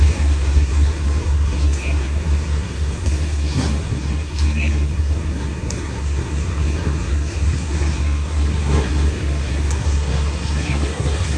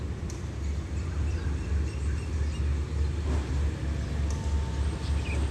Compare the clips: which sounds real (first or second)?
second